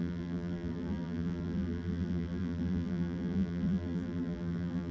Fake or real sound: fake